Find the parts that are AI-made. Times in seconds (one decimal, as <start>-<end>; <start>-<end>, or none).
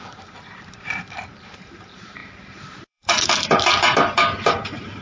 0.0-5.0